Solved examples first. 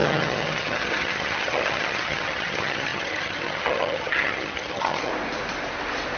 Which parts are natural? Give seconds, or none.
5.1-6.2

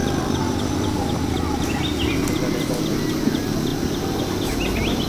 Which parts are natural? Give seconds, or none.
0.0-5.1

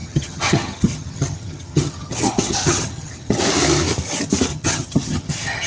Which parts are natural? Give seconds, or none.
3.4-4.5

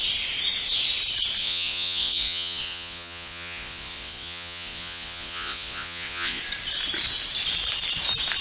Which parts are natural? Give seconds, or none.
0.0-1.4; 6.4-8.4

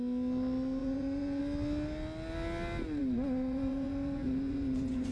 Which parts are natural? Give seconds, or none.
0.0-0.8; 1.4-3.0

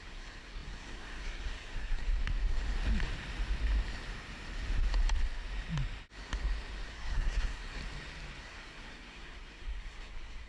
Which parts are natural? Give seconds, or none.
2.2-6.9; 7.8-8.4

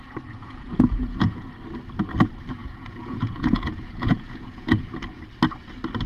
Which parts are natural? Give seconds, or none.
0.0-0.4; 1.5-2.6; 4.9-6.1